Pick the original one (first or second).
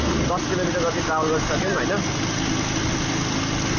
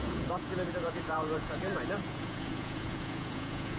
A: first